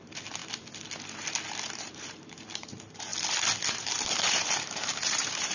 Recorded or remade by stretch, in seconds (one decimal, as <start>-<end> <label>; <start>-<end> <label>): 0.0-0.4 remade; 0.4-1.7 recorded; 1.7-3.1 remade; 3.1-3.7 recorded; 3.7-5.5 remade